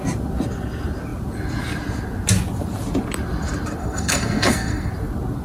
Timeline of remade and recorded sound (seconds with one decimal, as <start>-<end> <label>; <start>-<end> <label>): 0.0-3.8 recorded; 3.8-4.9 remade; 4.9-5.4 recorded